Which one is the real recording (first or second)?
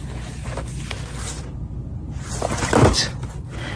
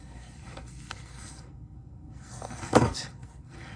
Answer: first